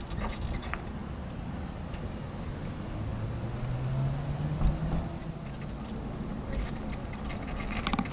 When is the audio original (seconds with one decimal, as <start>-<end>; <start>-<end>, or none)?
0.0-8.1